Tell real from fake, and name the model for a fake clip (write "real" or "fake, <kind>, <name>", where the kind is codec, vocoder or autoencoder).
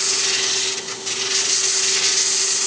real